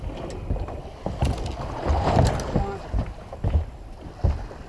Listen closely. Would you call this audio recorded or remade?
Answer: recorded